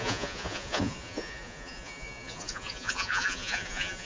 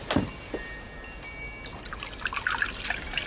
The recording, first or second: second